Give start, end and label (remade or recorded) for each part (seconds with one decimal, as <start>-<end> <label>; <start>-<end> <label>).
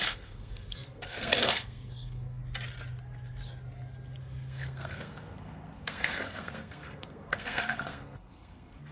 0.0-2.4 remade; 2.4-4.2 recorded; 4.2-8.9 remade